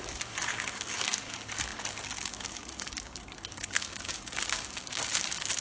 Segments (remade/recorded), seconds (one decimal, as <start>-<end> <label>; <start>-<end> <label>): 0.0-5.6 remade